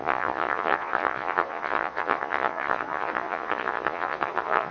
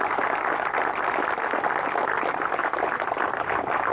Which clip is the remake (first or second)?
first